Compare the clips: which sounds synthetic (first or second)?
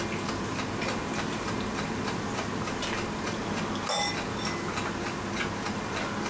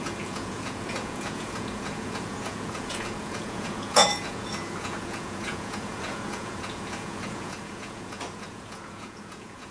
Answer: second